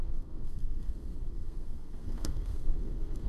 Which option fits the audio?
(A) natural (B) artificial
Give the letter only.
B